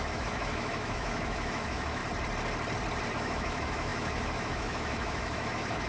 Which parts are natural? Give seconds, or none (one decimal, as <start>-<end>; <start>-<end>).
2.0-3.1